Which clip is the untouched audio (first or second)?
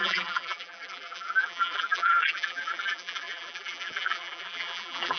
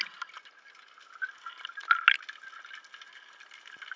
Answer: second